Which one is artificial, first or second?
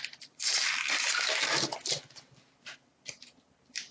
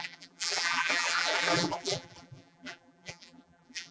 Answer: second